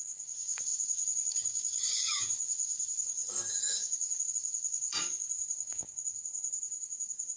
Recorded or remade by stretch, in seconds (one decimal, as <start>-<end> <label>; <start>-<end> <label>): 0.0-7.4 remade